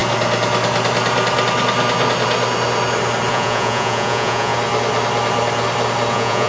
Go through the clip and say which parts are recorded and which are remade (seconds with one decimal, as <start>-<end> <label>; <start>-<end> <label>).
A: 0.0-3.3 recorded; 3.3-4.5 remade; 4.5-6.1 recorded; 6.1-6.5 remade

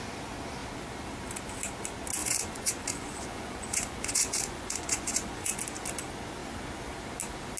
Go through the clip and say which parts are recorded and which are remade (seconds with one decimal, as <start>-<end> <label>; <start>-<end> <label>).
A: 0.0-2.2 recorded; 2.2-5.6 remade; 5.6-7.6 recorded

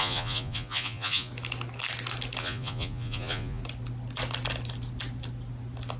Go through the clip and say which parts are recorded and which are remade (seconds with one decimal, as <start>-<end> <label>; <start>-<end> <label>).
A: 0.0-1.3 remade; 1.3-2.4 recorded; 2.4-3.6 remade; 3.6-6.0 recorded